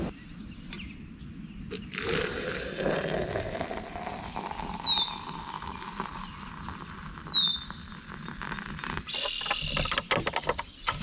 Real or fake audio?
real